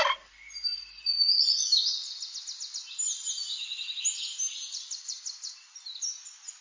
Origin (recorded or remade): recorded